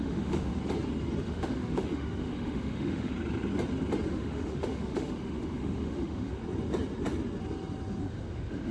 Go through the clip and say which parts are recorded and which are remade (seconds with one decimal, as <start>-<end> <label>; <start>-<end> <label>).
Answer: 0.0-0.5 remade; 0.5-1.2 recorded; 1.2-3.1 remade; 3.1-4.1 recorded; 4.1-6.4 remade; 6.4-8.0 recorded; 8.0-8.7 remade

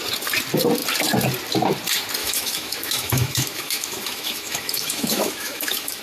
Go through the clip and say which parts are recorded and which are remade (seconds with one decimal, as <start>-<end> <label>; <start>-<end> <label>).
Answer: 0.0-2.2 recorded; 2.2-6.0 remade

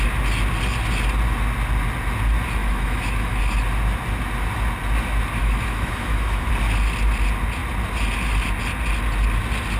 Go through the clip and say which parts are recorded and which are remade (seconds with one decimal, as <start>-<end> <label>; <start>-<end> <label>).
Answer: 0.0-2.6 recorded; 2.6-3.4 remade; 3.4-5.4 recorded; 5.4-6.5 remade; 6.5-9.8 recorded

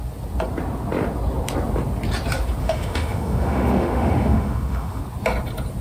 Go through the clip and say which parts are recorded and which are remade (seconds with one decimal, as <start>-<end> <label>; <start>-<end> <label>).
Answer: 0.0-2.6 recorded; 2.6-5.0 remade; 5.0-5.8 recorded

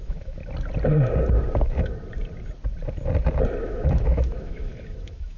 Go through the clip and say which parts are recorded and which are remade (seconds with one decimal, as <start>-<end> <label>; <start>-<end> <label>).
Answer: 0.0-0.4 remade; 0.4-3.6 recorded; 3.6-5.4 remade

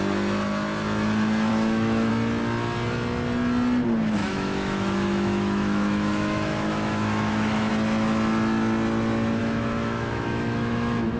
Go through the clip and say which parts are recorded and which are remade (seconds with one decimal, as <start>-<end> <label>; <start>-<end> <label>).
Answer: 0.0-1.5 recorded; 1.5-2.1 remade; 2.1-4.2 recorded; 4.2-7.7 remade; 7.7-9.4 recorded; 9.4-11.2 remade